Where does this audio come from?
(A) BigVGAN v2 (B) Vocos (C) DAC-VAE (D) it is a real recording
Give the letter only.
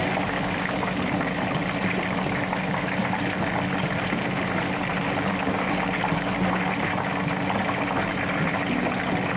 D